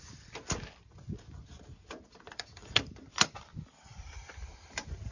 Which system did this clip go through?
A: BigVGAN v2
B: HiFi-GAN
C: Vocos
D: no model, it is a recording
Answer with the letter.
A